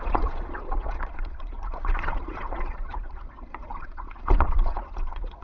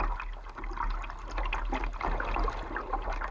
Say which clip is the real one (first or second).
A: second